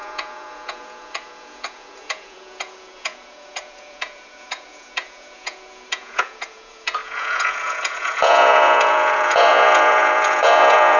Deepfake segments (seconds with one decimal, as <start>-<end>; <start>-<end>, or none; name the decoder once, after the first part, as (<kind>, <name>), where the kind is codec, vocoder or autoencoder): 0.0-11.0 (vocoder, Vocos)